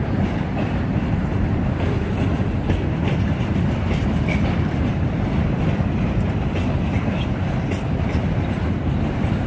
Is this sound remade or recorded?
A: remade